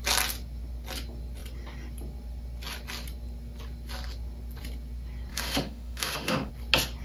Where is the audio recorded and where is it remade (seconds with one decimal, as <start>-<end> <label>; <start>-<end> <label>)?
0.0-5.3 recorded; 5.3-6.5 remade; 6.5-7.0 recorded